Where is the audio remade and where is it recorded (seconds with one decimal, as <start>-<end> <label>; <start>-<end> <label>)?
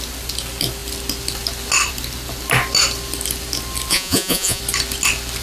0.0-3.9 recorded; 3.9-4.6 remade; 4.6-5.4 recorded